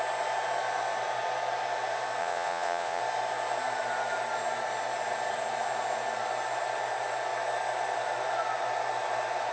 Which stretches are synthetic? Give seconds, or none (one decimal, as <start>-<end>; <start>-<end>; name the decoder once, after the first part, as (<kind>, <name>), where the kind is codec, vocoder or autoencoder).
2.2-3.0 (vocoder, Vocos)